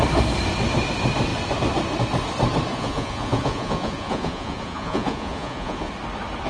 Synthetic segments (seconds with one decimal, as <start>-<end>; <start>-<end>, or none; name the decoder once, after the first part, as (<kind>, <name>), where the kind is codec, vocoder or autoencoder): 2.7-5.9 (vocoder, Vocos)

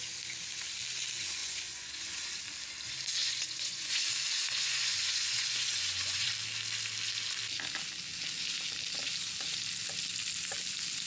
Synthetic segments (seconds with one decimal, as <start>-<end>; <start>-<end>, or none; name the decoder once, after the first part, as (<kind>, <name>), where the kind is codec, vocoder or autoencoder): 1.4-2.2 (vocoder, Vocos); 3.2-4.0; 4.4-6.3

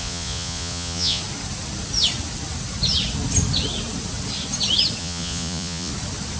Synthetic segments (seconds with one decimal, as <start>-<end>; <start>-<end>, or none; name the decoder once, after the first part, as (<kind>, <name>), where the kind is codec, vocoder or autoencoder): 0.0-1.2 (vocoder, Vocos); 5.0-5.9

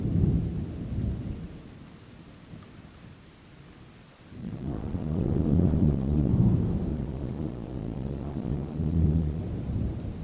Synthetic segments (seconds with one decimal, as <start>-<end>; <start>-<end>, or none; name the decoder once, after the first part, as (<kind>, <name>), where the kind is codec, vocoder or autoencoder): 4.4-6.3 (vocoder, Vocos); 6.9-9.4

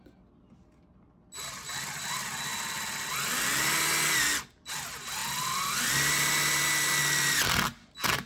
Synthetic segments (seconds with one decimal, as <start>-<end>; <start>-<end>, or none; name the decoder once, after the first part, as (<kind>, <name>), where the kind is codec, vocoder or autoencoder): none

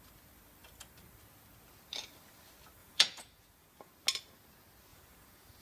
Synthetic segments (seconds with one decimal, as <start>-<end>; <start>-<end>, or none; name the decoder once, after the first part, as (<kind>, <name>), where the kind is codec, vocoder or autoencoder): 2.8-3.9 (vocoder, Vocos); 4.9-5.6

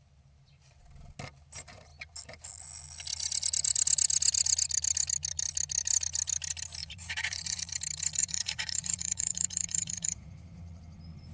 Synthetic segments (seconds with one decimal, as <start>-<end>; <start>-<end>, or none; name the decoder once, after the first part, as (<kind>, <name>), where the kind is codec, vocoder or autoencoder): 6.8-7.7 (vocoder, Vocos); 8.2-10.8

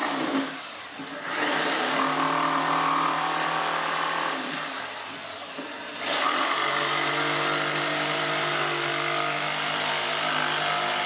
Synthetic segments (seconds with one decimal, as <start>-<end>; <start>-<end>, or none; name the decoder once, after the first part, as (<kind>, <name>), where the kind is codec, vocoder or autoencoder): none